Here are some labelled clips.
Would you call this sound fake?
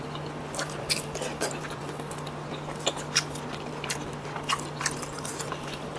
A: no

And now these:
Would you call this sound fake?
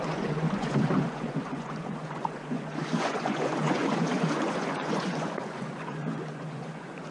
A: yes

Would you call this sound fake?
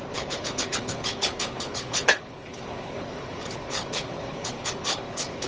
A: yes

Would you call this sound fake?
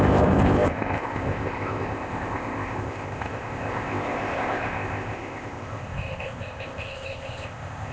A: yes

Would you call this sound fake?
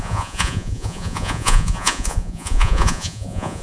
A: yes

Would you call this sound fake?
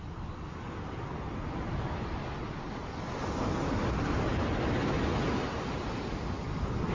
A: no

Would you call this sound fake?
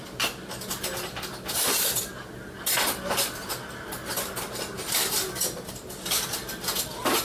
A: no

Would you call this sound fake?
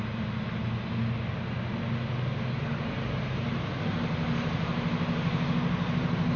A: no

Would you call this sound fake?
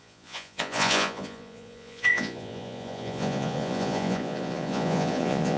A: yes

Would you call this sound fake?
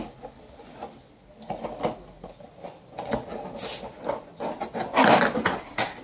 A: no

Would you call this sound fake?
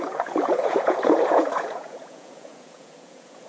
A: yes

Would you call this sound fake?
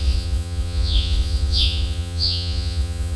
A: yes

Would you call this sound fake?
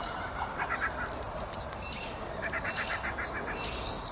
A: no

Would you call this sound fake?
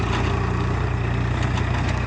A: no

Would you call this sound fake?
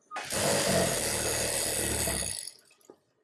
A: no